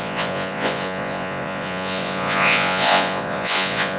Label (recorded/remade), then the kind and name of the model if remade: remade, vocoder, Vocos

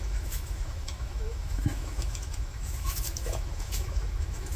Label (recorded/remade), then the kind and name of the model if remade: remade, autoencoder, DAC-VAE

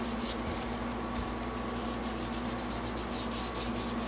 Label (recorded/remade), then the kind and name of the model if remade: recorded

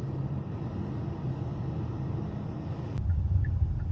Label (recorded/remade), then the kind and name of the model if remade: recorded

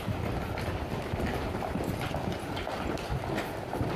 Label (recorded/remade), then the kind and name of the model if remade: recorded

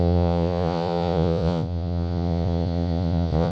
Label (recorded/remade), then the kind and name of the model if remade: remade, vocoder, Vocos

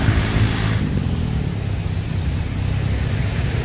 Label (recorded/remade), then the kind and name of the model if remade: recorded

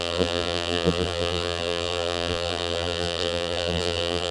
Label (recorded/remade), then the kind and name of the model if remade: remade, vocoder, BigVGAN v2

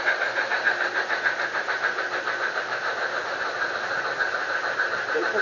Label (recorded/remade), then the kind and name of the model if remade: recorded